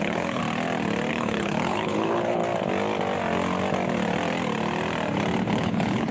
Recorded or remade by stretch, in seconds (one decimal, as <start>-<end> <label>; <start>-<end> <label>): 0.0-0.4 remade; 0.4-1.1 recorded; 1.1-2.4 remade; 2.4-5.5 recorded; 5.5-6.1 remade